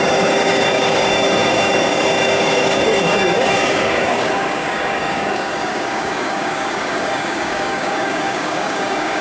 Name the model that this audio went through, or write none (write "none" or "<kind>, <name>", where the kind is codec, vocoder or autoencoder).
codec, DAC